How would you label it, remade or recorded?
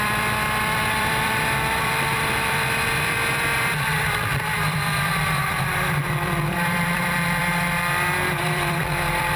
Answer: remade